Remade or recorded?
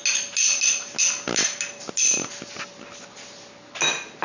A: recorded